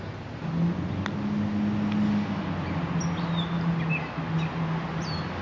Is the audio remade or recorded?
recorded